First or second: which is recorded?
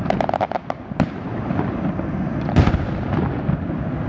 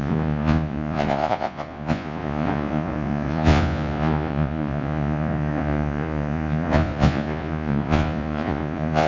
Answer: first